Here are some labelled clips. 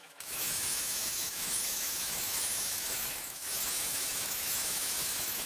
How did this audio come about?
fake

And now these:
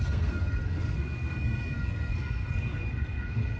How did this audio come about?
fake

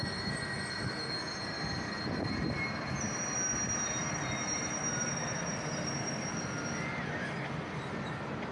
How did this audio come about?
real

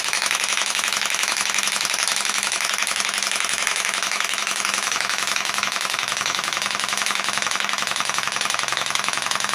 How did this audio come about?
fake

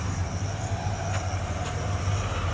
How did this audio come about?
real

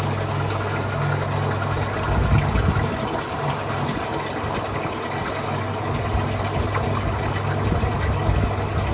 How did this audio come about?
real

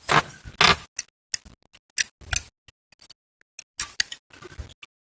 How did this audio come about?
real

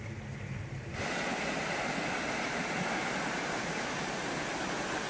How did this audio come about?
real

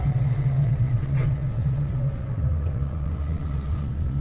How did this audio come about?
fake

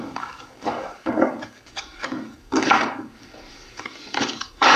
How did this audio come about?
fake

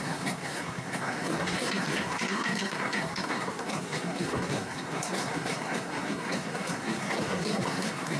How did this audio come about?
fake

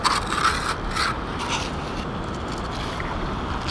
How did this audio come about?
real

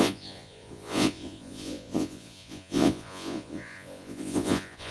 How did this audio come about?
fake